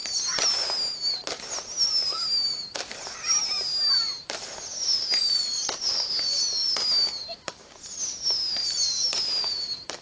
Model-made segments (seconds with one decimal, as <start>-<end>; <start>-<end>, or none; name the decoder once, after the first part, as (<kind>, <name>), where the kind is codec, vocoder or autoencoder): 5.2-6.1 (vocoder, BigVGAN v2)